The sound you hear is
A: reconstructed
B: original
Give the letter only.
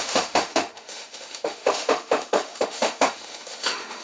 A